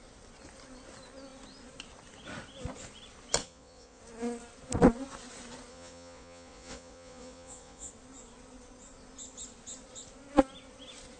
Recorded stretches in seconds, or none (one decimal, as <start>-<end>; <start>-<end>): 0.0-3.4; 4.0-5.7; 7.9-11.2